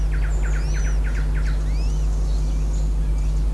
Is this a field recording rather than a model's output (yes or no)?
yes